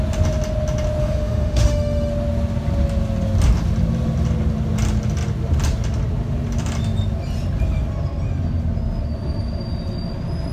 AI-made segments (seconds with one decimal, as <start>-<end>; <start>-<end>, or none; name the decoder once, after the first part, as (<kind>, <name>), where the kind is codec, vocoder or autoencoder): 1.0-2.1 (autoencoder, DAC-VAE)